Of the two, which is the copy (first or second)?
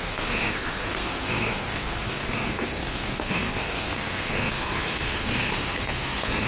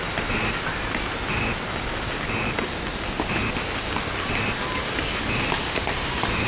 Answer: first